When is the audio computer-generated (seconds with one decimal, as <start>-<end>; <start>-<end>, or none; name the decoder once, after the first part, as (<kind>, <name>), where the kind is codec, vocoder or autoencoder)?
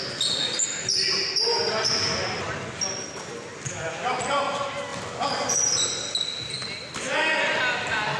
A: 4.9-6.4 (vocoder, BigVGAN v2)